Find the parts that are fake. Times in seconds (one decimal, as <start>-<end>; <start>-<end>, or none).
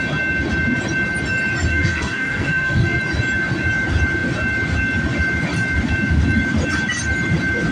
1.7-3.0